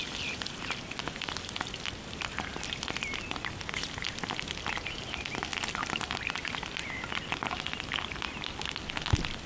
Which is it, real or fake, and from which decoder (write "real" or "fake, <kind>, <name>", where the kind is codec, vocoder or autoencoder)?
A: real